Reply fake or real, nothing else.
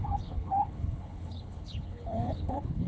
fake